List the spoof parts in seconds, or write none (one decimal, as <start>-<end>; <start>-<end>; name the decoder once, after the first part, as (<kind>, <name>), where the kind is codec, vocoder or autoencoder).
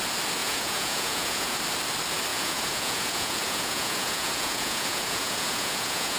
0.4-1.6 (vocoder, Vocos); 2.3-6.2